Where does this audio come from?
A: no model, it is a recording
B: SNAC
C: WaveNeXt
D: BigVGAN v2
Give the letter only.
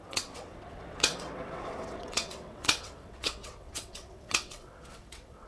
C